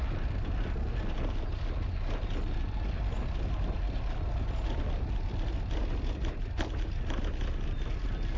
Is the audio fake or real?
real